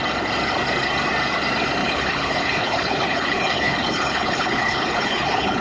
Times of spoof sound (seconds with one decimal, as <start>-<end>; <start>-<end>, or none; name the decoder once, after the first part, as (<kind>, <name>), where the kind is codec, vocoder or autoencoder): 1.8-5.6 (codec, HILCodec)